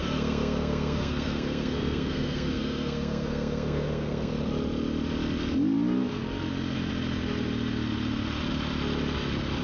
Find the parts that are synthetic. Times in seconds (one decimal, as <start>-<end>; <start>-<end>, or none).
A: 0.0-4.3